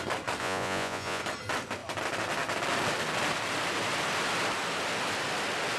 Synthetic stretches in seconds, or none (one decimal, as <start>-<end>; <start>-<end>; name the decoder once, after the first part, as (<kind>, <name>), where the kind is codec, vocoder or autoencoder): 0.4-1.2 (vocoder, Vocos)